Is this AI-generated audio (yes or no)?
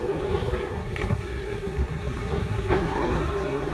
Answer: yes